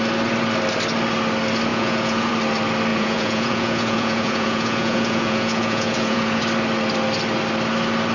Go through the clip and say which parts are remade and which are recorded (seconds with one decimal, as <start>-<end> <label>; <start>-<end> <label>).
0.0-1.7 recorded; 1.7-2.3 remade; 2.3-2.9 recorded; 2.9-6.4 remade; 6.4-8.1 recorded